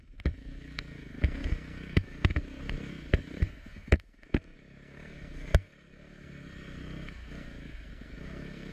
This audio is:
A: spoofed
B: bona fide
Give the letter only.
A